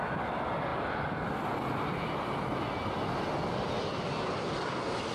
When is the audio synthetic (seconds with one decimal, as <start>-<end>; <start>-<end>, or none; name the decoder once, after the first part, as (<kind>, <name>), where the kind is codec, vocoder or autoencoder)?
none